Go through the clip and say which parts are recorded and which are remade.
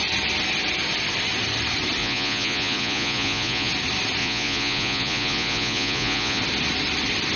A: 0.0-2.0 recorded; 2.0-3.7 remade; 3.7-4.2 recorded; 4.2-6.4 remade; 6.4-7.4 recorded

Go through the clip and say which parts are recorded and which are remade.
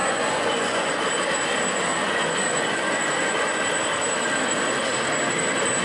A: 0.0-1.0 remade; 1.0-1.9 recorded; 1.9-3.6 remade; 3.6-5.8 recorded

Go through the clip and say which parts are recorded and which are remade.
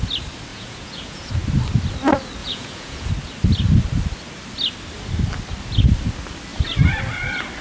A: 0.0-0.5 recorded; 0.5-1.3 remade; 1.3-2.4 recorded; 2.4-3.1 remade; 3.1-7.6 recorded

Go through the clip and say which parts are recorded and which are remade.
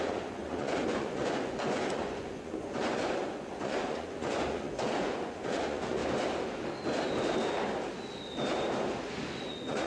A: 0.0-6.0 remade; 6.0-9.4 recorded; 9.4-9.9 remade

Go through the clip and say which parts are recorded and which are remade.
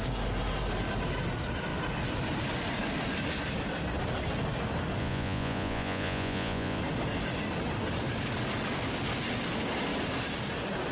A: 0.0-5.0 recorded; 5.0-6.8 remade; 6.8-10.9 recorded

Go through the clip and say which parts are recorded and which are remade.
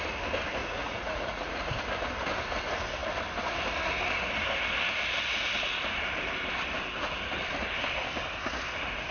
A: 0.0-0.6 recorded; 0.6-1.6 remade; 1.6-9.1 recorded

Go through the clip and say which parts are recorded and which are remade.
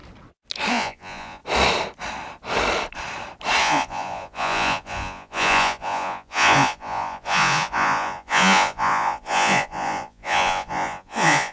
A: 0.0-0.7 recorded; 0.7-1.4 remade; 1.4-3.6 recorded; 3.6-11.5 remade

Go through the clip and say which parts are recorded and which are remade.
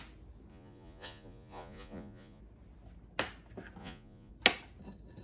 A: 0.0-0.5 recorded; 0.5-2.4 remade; 2.4-3.8 recorded; 3.8-4.3 remade; 4.3-5.2 recorded